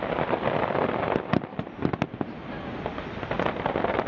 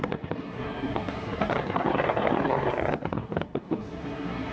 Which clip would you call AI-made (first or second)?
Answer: second